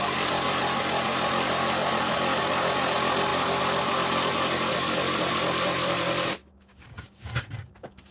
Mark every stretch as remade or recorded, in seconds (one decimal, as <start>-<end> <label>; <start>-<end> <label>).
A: 0.0-6.4 recorded; 6.4-8.1 remade